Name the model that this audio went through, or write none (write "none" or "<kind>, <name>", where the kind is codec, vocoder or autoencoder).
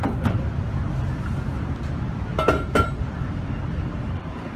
none